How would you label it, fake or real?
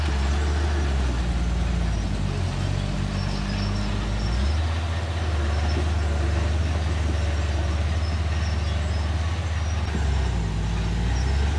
real